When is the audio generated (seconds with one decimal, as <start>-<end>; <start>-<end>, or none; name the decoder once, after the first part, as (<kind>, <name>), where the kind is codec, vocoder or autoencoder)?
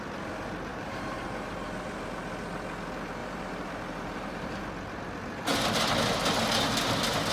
0.7-2.1 (vocoder, BigVGAN v2); 3.2-4.6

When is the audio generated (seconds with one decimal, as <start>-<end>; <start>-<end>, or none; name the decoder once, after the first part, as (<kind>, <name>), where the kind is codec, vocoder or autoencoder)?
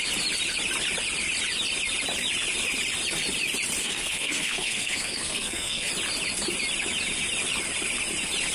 3.8-5.9 (codec, SNAC)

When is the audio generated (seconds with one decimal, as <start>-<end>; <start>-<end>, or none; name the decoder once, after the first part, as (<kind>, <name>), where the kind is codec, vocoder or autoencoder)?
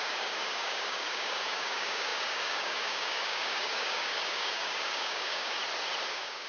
0.0-5.6 (codec, DAC); 6.1-6.5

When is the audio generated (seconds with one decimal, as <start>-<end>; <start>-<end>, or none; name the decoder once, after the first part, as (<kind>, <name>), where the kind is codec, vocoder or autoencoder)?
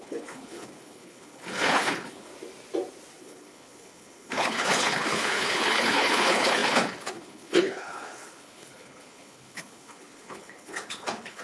0.0-2.3 (codec, HILCodec); 3.2-11.4